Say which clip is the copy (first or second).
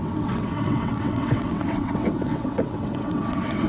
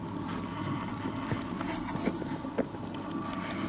first